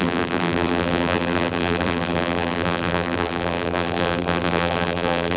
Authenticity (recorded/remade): remade